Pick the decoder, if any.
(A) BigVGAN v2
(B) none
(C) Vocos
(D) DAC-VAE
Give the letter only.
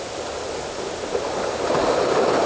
B